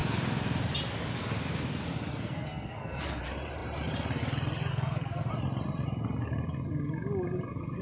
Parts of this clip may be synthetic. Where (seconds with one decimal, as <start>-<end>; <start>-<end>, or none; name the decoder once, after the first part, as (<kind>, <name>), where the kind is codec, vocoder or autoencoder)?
2.1-3.2 (codec, SNAC); 4.7-5.3